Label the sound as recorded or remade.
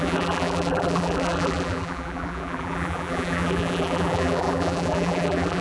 remade